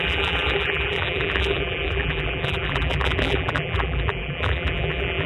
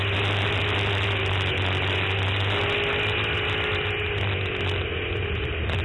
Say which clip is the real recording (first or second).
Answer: second